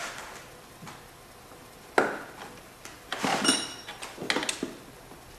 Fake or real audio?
real